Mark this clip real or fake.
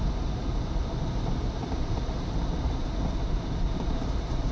fake